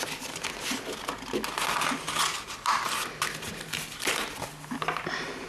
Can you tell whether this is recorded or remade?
recorded